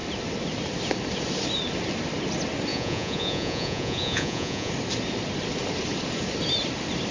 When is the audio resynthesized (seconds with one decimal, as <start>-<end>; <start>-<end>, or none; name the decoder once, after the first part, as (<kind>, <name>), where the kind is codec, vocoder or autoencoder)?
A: 2.7-4.7 (vocoder, Vocos)